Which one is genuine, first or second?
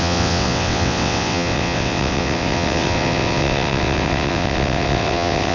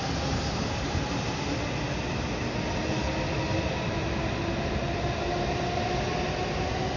second